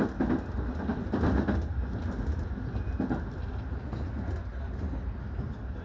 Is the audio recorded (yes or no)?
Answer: yes